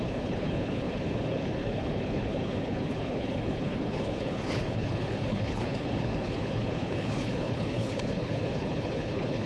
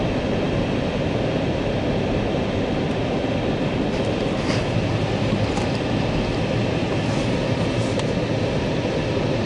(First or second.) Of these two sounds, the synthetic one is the first